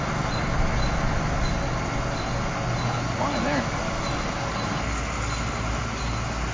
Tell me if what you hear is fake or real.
real